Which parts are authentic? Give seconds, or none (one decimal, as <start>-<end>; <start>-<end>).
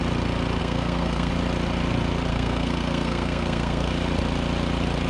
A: 0.0-0.6; 1.3-2.3; 3.9-5.1